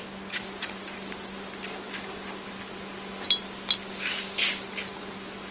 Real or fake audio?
real